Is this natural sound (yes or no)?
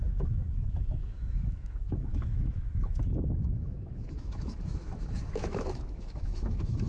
no